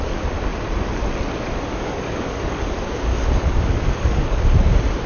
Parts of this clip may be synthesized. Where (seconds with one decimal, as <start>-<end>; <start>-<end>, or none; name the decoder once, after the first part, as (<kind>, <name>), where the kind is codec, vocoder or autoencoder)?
1.7-2.7 (codec, DAC); 3.1-4.4